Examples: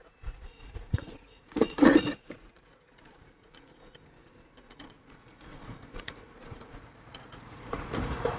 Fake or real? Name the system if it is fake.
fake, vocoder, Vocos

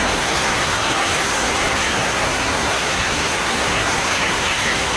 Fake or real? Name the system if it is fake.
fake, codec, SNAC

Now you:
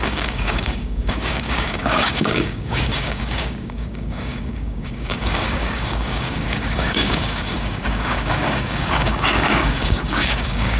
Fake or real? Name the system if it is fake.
fake, codec, DAC